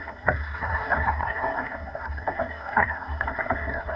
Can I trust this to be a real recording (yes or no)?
no